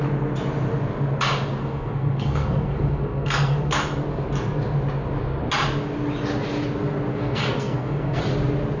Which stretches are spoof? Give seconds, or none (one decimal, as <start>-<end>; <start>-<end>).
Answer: 1.6-3.7; 7.1-8.2